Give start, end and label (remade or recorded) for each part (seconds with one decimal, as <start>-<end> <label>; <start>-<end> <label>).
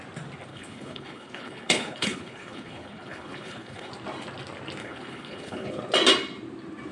0.0-0.5 recorded; 0.5-3.9 remade; 3.9-4.8 recorded; 4.8-5.8 remade; 5.8-6.9 recorded